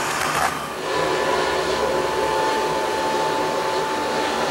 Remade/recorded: recorded